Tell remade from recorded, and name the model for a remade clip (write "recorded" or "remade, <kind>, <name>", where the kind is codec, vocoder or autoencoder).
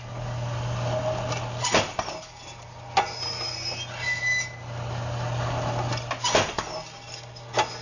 recorded